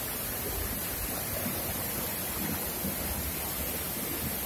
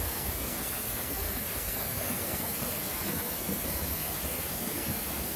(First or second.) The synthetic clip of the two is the second